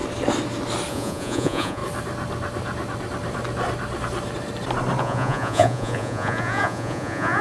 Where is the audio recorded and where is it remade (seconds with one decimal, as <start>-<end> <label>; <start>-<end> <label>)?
0.0-0.9 recorded; 0.9-1.8 remade; 1.8-5.0 recorded; 5.0-7.4 remade

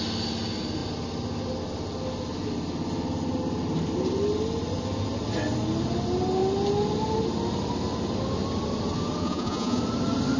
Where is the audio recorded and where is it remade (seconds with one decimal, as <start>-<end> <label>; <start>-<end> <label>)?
0.0-9.2 recorded; 9.2-9.8 remade; 9.8-10.4 recorded

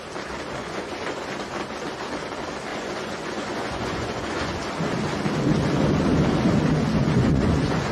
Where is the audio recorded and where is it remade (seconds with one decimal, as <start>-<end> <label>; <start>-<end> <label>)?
0.0-0.6 recorded; 0.6-1.2 remade; 1.2-2.7 recorded; 2.7-4.6 remade; 4.6-7.0 recorded; 7.0-7.9 remade

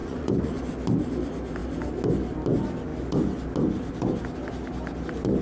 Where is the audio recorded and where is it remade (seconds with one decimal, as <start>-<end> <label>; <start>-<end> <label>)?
0.0-0.6 remade; 0.6-5.4 recorded

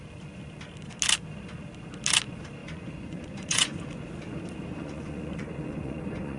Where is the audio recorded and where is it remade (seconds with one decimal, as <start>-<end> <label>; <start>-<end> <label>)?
0.0-2.6 recorded; 2.6-4.1 remade; 4.1-4.7 recorded; 4.7-6.4 remade

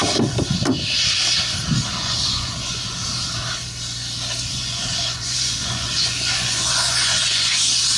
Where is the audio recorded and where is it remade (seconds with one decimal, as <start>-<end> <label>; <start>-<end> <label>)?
0.0-2.0 recorded; 2.0-3.0 remade; 3.0-4.5 recorded; 4.5-8.0 remade